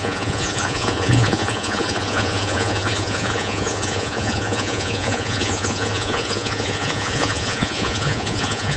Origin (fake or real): fake